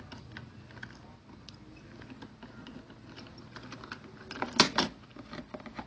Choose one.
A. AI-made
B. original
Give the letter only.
B